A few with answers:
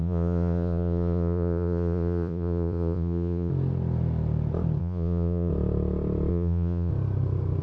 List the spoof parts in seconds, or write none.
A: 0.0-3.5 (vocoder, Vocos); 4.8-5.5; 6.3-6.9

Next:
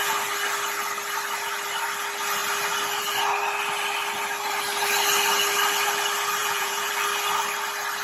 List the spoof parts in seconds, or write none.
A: 6.4-6.9 (vocoder, Vocos)